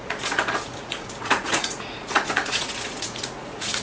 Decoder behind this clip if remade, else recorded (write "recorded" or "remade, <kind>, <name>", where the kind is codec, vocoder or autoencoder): remade, vocoder, Vocos